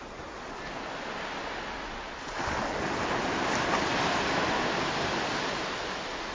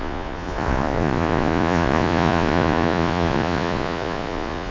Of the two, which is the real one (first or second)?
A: first